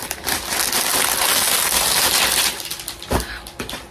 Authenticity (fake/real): real